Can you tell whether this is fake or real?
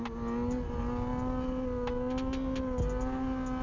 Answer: real